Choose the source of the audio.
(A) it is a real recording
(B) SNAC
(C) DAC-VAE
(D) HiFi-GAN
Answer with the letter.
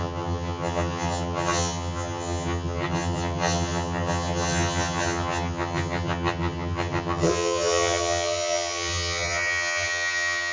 D